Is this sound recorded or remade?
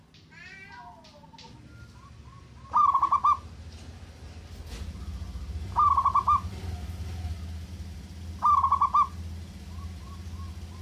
recorded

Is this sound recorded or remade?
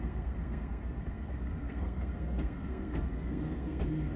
remade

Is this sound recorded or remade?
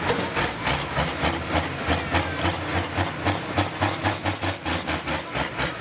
recorded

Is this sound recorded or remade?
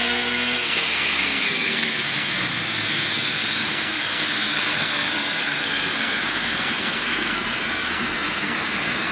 remade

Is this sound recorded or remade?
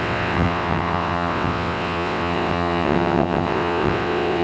remade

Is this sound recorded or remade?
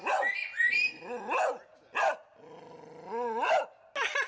recorded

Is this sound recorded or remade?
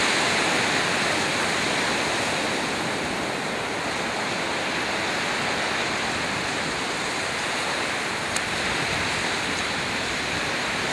recorded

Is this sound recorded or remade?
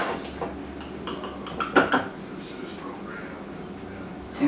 recorded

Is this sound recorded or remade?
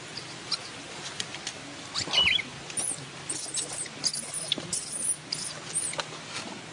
recorded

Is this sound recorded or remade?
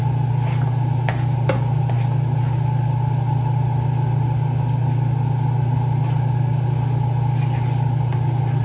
recorded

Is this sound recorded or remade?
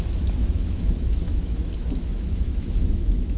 remade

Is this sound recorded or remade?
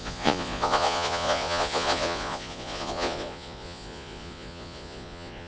remade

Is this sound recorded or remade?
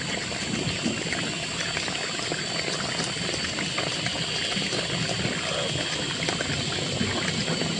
recorded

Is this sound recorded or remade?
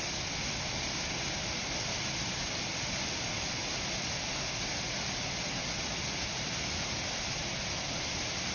recorded